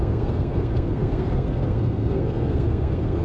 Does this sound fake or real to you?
fake